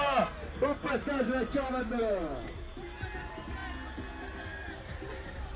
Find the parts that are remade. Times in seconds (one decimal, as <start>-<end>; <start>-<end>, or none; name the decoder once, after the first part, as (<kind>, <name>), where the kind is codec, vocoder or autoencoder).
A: 0.0-3.6 (vocoder, BigVGAN v2); 4.8-5.6